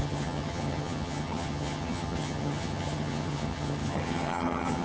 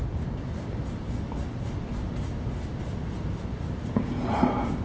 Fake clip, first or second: first